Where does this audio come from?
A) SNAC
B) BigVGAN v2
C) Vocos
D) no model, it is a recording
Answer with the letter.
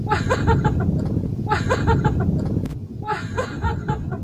D